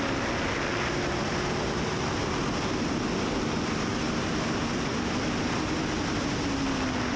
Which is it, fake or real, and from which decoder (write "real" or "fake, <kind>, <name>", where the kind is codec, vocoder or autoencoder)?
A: real